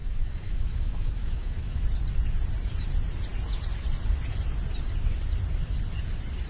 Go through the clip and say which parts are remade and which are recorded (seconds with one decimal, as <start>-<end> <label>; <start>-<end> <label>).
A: 0.0-1.8 remade; 1.8-6.5 recorded